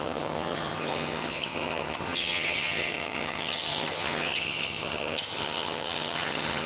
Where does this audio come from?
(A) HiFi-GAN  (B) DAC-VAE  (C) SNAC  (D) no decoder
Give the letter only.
A